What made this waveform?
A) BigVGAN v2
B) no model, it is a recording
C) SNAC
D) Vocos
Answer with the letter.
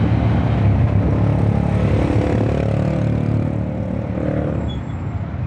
B